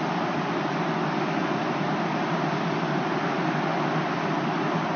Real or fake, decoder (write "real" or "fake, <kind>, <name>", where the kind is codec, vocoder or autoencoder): real